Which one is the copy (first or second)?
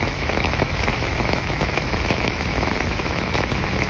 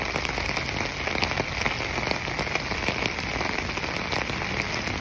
first